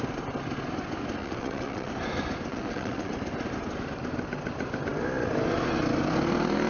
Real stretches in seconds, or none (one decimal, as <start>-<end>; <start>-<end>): 0.0-1.2; 1.9-2.5; 3.1-6.7